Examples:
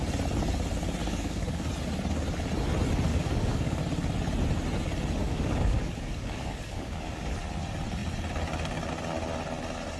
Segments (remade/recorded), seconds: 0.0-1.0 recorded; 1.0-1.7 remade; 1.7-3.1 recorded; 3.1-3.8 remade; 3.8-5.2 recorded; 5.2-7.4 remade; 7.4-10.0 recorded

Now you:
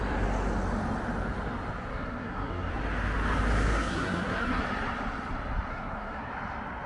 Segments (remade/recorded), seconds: 0.0-1.9 recorded; 1.9-2.7 remade; 2.7-3.7 recorded; 3.7-4.6 remade; 4.6-5.7 recorded; 5.7-6.3 remade; 6.3-6.9 recorded

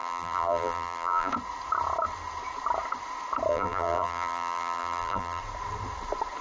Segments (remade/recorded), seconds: 0.0-1.3 remade; 1.3-3.5 recorded; 3.5-5.4 remade; 5.4-6.4 recorded

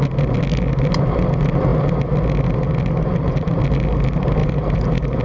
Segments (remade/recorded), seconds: 0.0-4.4 recorded; 4.4-5.2 remade